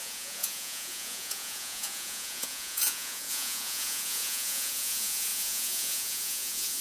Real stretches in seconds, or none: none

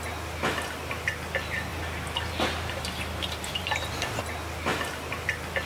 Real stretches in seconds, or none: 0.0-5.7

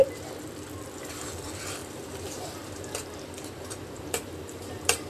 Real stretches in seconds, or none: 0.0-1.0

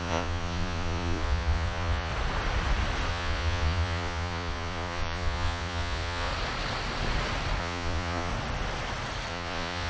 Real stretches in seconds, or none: 2.1-3.1; 6.3-7.6; 8.3-9.3